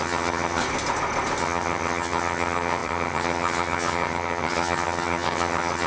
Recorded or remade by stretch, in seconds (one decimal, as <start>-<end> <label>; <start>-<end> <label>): 0.0-0.6 remade; 0.6-1.4 recorded; 1.4-5.9 remade